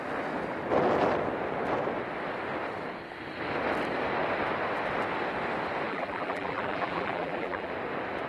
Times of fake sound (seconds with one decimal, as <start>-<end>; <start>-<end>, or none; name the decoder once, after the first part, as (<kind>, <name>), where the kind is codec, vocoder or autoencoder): 5.9-7.7 (vocoder, BigVGAN v2)